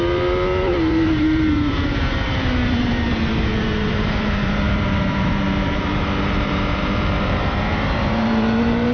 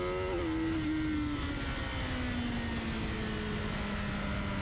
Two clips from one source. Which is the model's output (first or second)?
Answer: first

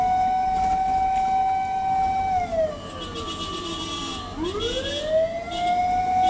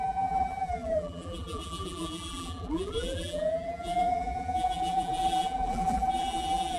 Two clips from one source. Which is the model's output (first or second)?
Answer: second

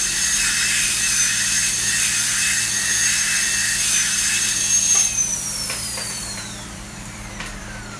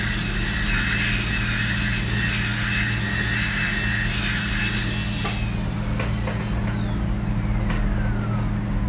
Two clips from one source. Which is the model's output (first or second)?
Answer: first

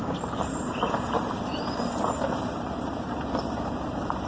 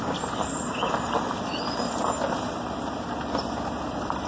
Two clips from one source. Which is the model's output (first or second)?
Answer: first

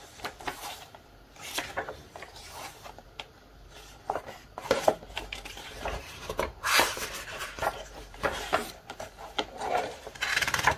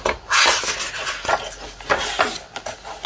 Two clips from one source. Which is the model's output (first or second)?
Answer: first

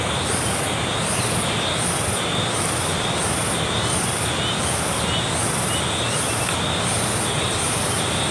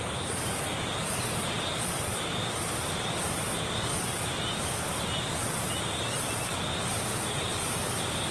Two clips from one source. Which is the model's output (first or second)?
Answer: second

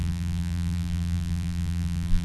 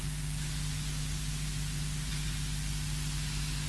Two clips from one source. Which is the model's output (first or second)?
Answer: first